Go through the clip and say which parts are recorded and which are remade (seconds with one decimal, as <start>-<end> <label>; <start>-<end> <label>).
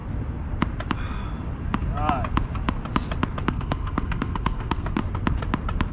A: 0.0-3.5 recorded; 3.5-5.0 remade; 5.0-5.9 recorded